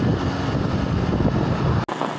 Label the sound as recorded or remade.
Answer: recorded